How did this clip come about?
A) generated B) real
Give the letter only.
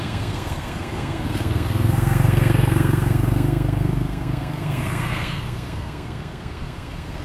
A